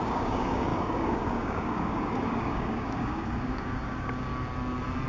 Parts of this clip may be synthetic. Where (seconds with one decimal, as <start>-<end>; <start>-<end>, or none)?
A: 0.0-4.3